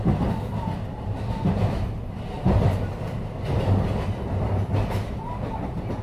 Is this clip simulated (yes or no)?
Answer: no